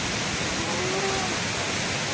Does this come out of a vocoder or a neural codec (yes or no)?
no